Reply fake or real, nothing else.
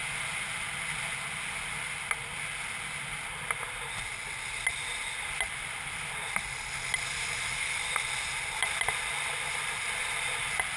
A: real